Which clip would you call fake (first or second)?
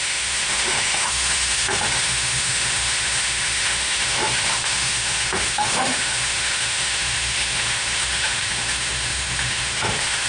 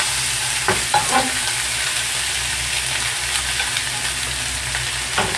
first